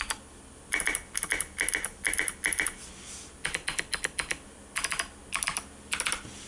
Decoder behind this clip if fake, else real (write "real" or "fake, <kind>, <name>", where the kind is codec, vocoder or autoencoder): real